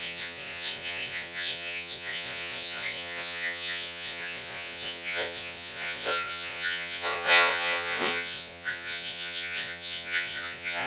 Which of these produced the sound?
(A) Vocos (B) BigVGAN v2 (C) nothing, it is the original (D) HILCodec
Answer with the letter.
A